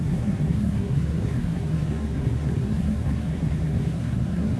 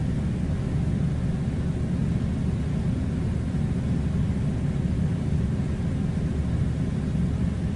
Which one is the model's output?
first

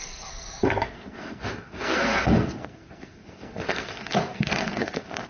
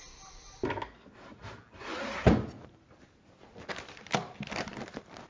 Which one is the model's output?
first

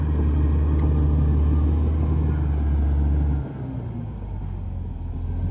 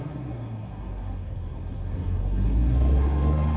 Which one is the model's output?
second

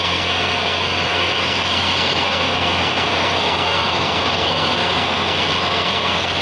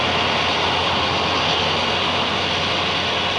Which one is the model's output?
first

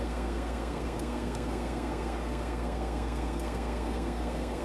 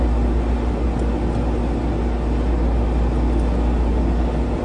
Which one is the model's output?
first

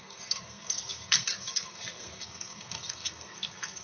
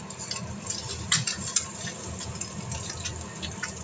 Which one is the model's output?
first